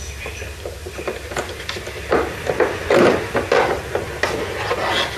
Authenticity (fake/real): fake